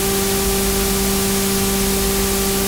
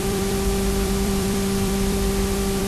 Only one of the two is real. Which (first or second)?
first